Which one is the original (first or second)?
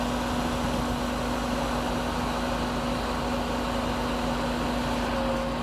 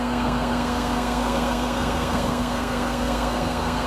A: first